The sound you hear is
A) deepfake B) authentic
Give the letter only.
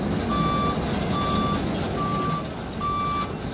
B